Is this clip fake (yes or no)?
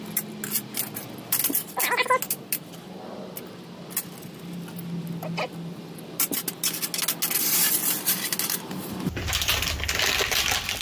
no